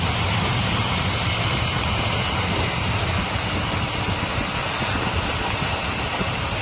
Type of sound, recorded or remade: recorded